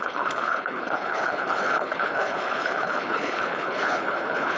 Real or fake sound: fake